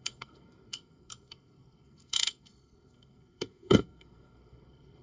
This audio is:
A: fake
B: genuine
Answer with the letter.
A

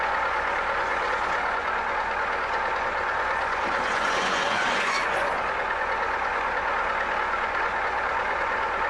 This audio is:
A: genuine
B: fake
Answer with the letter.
B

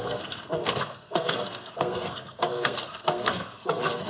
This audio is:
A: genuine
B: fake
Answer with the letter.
B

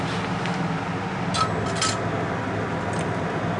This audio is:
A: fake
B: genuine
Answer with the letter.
B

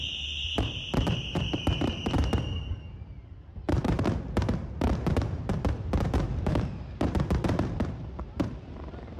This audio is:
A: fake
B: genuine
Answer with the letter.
A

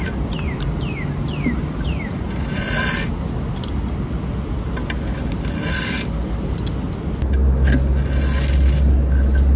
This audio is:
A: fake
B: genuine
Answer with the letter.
B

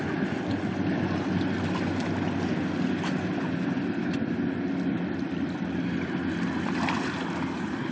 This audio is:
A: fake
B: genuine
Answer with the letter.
B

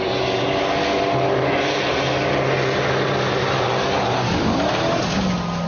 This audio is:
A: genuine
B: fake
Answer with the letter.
A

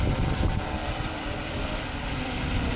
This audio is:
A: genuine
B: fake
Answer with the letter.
B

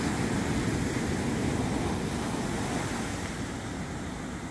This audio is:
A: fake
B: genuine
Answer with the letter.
B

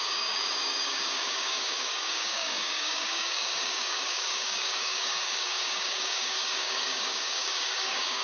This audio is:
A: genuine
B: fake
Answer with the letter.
B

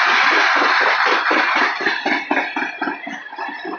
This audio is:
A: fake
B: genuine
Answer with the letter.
B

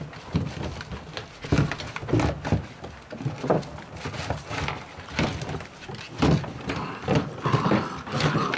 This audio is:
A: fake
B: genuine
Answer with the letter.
B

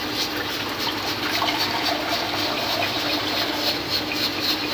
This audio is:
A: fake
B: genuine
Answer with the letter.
B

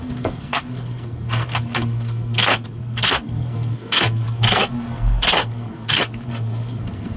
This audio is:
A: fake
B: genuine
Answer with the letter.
A